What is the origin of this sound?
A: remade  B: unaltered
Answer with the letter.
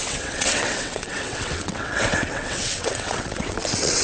A